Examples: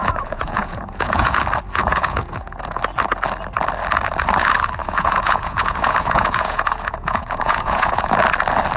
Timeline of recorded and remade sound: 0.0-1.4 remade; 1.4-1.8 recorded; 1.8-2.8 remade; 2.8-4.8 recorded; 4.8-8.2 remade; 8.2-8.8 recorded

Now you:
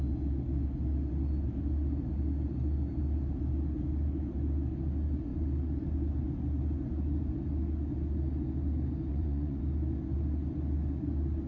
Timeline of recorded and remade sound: 0.0-9.1 recorded; 9.1-9.6 remade; 9.6-11.5 recorded

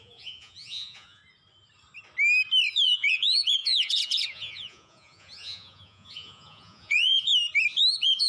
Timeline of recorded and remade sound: 0.0-1.2 remade; 1.2-2.7 recorded; 2.7-7.3 remade; 7.3-7.9 recorded; 7.9-8.3 remade